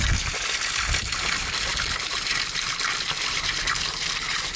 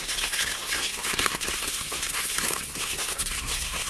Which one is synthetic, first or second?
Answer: second